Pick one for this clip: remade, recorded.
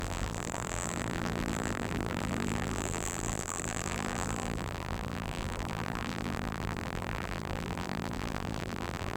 remade